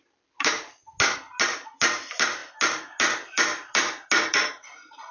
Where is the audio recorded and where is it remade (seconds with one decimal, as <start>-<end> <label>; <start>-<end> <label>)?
0.0-5.1 recorded